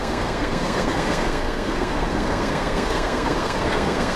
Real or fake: fake